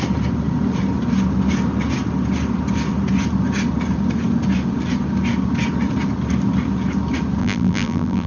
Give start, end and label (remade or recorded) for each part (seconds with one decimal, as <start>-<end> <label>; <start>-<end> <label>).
0.0-7.4 recorded; 7.4-8.3 remade